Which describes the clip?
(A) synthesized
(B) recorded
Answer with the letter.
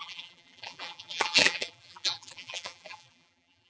A